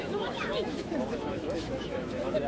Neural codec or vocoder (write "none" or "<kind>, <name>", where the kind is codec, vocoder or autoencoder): autoencoder, DAC-VAE